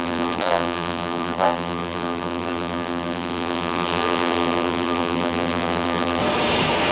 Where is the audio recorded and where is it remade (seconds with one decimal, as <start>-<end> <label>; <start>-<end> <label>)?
0.0-6.2 remade; 6.2-6.9 recorded